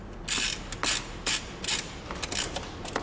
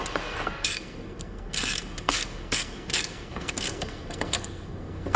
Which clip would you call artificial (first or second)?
second